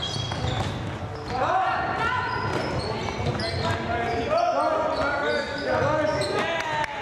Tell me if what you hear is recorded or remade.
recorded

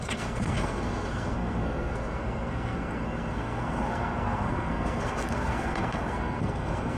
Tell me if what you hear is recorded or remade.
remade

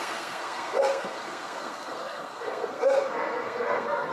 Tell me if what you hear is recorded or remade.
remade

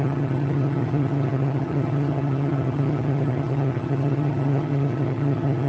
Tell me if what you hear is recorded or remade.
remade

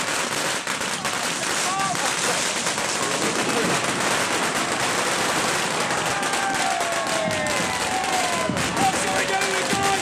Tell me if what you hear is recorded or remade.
recorded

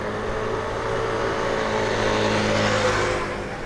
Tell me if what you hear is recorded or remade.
recorded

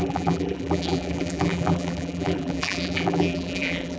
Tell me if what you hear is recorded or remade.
remade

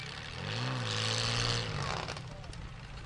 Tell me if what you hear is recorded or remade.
recorded